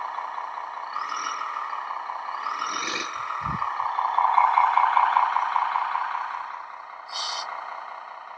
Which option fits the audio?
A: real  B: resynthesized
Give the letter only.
A